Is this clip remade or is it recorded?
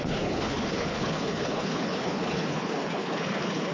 remade